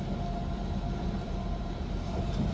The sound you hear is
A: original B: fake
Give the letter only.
B